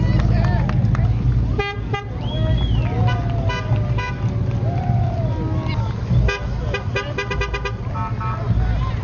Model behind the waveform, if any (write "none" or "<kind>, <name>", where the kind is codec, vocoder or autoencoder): none